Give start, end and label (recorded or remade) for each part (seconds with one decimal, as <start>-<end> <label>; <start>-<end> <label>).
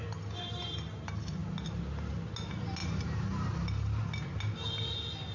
0.0-5.3 recorded